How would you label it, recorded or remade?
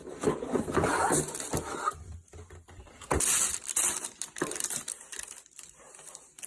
recorded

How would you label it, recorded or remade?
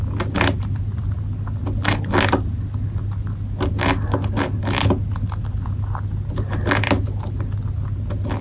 recorded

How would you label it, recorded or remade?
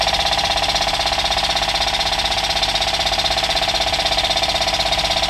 recorded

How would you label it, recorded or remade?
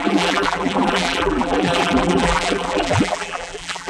remade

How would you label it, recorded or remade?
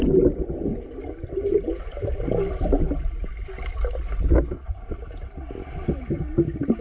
recorded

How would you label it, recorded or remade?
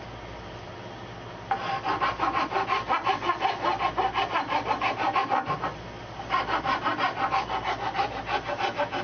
recorded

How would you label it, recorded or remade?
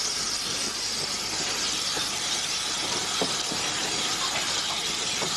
remade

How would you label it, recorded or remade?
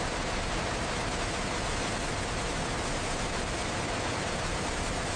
recorded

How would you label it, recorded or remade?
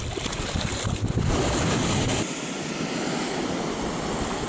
recorded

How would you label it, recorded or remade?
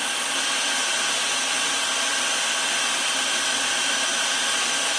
recorded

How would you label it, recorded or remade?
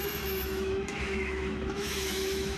remade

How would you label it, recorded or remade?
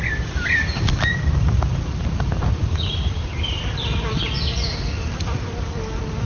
remade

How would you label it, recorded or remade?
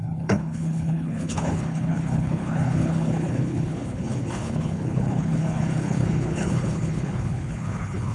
remade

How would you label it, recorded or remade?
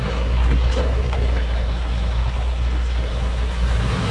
remade